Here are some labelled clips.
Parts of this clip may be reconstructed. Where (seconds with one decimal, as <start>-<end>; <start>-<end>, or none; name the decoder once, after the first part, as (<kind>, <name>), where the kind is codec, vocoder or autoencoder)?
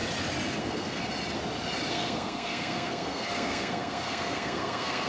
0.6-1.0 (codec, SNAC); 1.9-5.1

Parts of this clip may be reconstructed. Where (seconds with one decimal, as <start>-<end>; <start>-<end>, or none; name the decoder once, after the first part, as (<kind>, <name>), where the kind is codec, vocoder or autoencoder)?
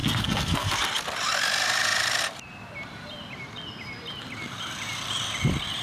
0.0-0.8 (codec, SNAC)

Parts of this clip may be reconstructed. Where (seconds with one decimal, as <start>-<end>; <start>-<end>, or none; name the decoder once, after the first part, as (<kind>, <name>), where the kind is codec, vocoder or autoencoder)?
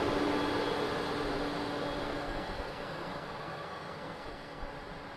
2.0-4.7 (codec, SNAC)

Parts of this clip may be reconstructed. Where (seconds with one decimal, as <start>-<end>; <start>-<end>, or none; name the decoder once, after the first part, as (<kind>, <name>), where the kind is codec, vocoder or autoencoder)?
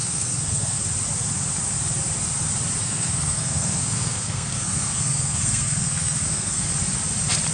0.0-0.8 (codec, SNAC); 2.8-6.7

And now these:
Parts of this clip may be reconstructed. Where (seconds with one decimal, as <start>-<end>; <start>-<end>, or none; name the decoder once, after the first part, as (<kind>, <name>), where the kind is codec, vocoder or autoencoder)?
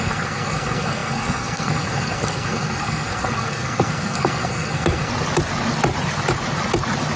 0.0-5.1 (codec, SNAC)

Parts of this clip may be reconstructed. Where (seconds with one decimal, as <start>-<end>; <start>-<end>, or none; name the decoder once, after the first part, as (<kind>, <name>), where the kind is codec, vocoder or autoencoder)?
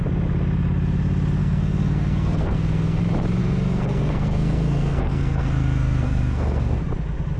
1.4-3.0 (codec, SNAC); 3.4-6.8